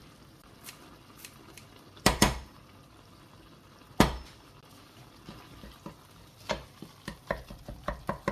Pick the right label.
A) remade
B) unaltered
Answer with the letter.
B